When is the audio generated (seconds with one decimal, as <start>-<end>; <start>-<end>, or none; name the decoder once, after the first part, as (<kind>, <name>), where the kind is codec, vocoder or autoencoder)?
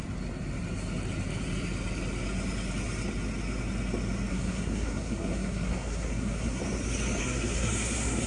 4.3-6.6 (codec, SNAC); 7.2-8.3